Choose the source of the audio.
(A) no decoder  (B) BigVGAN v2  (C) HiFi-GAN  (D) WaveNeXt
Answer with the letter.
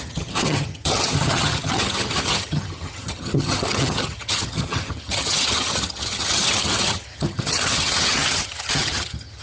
C